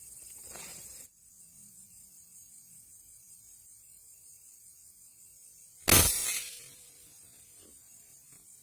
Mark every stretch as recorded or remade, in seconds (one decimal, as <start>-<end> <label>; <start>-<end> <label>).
0.0-8.6 recorded